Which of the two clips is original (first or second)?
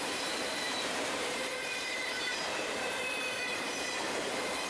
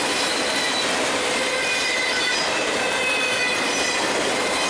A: second